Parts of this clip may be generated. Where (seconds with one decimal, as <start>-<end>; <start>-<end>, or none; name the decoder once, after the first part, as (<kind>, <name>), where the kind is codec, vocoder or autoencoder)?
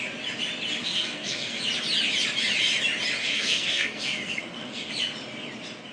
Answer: 0.8-1.6 (codec, SNAC); 3.2-4.9